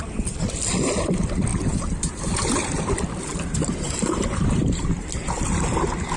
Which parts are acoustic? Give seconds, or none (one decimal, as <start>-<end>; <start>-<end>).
0.0-1.5; 2.9-3.3; 5.1-6.2